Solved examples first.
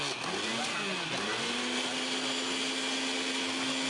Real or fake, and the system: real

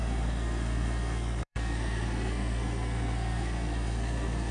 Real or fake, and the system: fake, codec, SNAC